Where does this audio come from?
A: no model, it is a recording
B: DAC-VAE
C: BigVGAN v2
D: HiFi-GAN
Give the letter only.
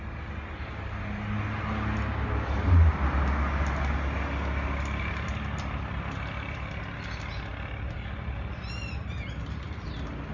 A